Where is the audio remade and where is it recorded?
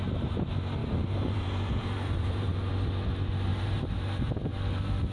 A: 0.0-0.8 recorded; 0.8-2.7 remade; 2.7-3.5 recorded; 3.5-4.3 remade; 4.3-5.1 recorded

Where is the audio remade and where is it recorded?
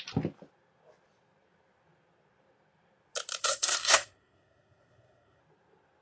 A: 0.0-3.4 recorded; 3.4-5.4 remade; 5.4-6.0 recorded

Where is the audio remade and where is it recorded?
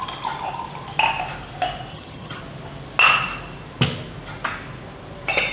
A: 0.0-1.9 recorded; 1.9-2.4 remade; 2.4-5.5 recorded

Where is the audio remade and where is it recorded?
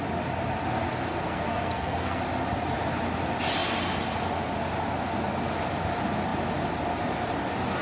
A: 0.0-1.1 recorded; 1.1-2.2 remade; 2.2-7.8 recorded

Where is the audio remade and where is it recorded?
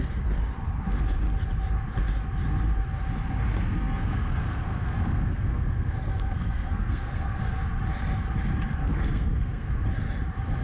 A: 0.0-3.5 recorded; 3.5-7.4 remade; 7.4-8.8 recorded; 8.8-9.7 remade; 9.7-10.6 recorded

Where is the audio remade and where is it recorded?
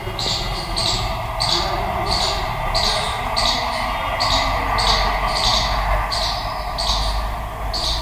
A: 0.0-8.0 recorded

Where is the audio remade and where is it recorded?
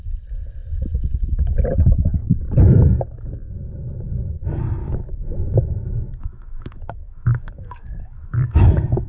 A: 0.0-4.8 recorded; 4.8-8.7 remade; 8.7-9.1 recorded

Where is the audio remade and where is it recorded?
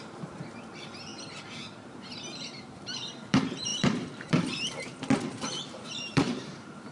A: 0.0-1.1 remade; 1.1-1.9 recorded; 1.9-4.9 remade; 4.9-5.7 recorded; 5.7-6.9 remade